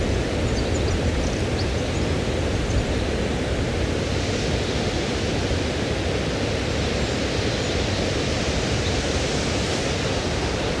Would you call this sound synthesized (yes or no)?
no